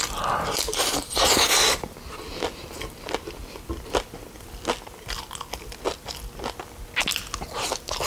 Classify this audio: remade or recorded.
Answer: recorded